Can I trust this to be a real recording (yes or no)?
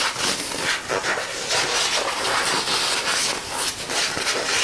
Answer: yes